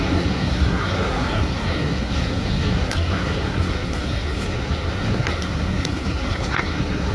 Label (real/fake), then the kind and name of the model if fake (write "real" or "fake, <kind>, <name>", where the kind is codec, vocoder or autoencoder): fake, codec, SNAC